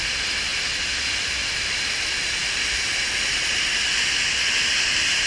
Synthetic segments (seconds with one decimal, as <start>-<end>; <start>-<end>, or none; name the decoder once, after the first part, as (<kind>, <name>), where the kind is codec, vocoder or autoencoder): none